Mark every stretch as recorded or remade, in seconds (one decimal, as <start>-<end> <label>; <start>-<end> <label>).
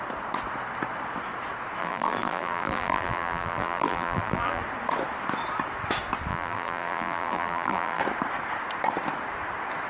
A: 0.0-1.8 recorded; 1.8-4.6 remade; 4.6-6.3 recorded; 6.3-8.0 remade; 8.0-9.9 recorded